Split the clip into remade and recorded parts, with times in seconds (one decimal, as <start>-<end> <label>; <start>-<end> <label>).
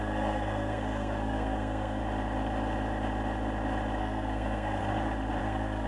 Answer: 0.0-2.0 remade; 2.0-4.0 recorded; 4.0-4.8 remade; 4.8-5.4 recorded; 5.4-5.9 remade